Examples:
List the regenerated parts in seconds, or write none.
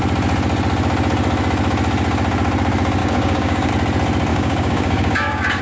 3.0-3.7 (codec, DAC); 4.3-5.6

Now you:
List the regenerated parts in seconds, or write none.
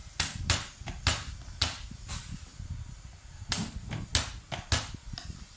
none